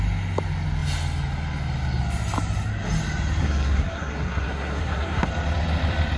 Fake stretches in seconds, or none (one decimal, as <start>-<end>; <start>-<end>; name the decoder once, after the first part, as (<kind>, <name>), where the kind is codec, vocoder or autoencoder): 3.4-5.3 (codec, SNAC)